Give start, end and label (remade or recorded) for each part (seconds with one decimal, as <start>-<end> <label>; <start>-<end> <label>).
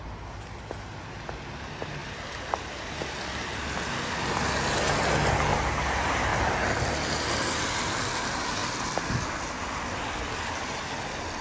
0.0-11.4 recorded